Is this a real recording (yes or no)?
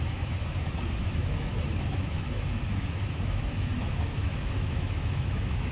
no